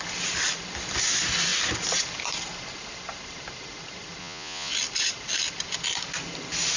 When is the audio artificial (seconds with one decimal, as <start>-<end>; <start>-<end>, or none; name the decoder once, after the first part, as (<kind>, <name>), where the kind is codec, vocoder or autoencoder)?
4.2-4.7 (vocoder, Vocos)